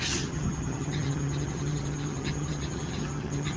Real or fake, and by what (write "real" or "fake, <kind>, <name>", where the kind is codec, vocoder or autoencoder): fake, vocoder, HiFi-GAN